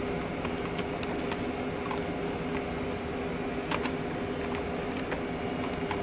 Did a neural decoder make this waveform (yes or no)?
no